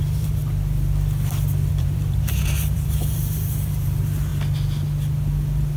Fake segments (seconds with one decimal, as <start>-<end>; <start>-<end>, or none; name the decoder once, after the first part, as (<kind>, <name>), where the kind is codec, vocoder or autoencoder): 0.0-0.4 (vocoder, BigVGAN v2); 1.7-4.3